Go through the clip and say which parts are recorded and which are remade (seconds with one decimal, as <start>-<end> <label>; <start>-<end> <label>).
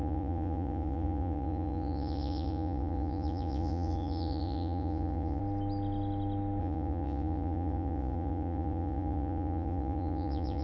0.0-5.4 remade; 5.4-6.6 recorded; 6.6-10.6 remade